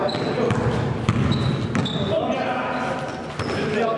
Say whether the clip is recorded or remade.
recorded